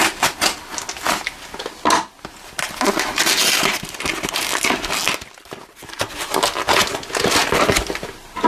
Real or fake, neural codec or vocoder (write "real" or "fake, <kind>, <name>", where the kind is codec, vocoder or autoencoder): real